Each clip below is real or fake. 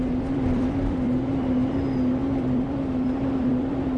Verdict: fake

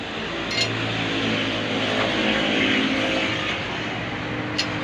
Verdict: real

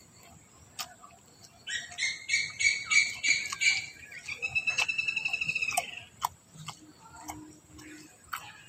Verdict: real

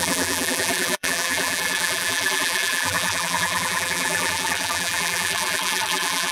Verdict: fake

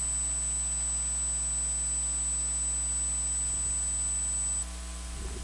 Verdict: real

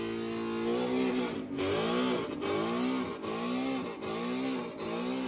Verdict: real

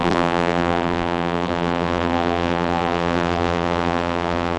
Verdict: fake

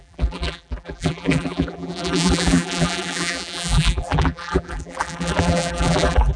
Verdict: fake